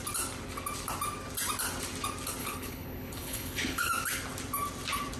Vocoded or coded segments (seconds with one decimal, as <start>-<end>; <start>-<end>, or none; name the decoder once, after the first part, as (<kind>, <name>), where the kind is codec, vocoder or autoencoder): 2.4-3.9 (codec, HILCodec)